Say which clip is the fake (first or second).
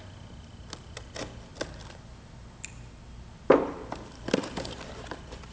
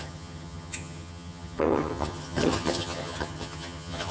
second